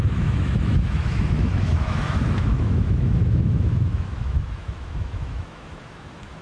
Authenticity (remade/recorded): remade